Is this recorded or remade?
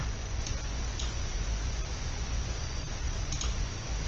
remade